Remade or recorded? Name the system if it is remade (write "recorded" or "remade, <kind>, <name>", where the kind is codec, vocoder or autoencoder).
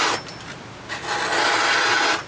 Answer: recorded